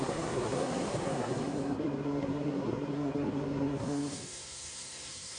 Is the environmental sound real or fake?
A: fake